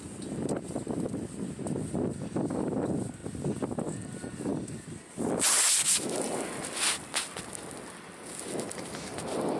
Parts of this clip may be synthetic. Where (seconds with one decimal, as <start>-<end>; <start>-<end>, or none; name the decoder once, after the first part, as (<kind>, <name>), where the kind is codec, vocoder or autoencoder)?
none